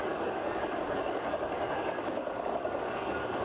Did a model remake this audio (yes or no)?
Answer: yes